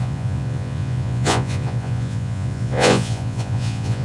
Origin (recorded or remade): remade